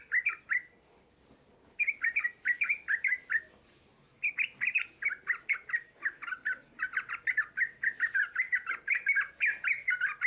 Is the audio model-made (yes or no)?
no